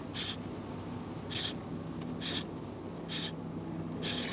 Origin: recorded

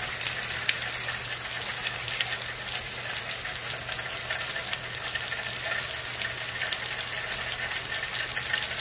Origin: recorded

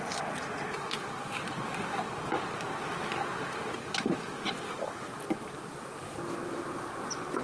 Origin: recorded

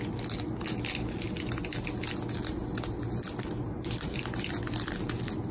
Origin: recorded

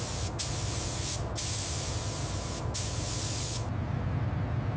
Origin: recorded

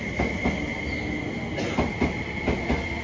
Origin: recorded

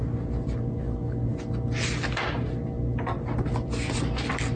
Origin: recorded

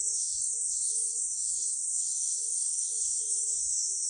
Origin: remade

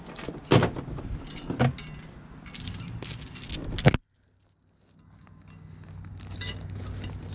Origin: recorded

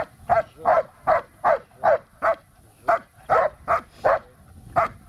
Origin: recorded